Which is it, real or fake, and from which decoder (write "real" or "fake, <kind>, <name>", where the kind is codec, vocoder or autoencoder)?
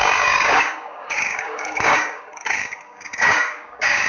fake, codec, DAC